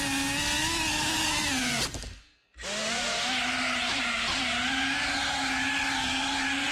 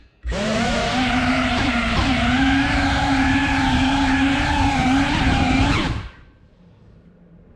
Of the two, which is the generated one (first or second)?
second